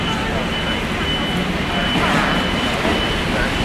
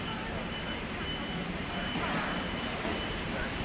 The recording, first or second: first